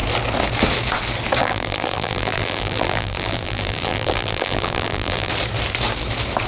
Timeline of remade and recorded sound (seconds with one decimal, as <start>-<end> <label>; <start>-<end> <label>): 0.0-1.4 recorded; 1.4-5.3 remade; 5.3-6.5 recorded